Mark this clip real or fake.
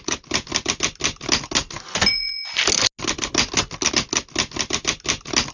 real